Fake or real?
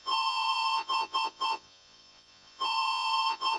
fake